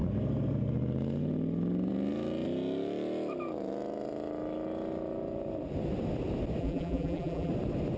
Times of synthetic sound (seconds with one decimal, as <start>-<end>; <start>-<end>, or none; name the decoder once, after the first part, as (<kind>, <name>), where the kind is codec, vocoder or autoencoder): 6.6-7.5 (vocoder, BigVGAN v2)